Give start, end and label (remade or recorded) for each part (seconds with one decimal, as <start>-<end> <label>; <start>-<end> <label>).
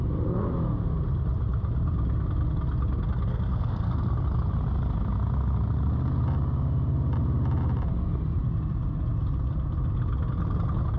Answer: 0.0-3.3 recorded; 3.3-4.0 remade; 4.0-11.0 recorded